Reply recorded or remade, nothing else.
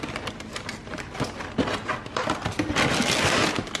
recorded